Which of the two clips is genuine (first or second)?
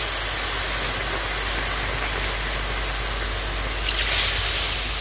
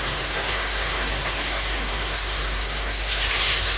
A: first